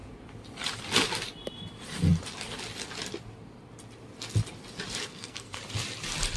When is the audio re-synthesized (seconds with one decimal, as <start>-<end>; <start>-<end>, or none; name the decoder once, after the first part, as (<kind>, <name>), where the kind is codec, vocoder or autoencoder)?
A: 5.0-5.6 (codec, SNAC)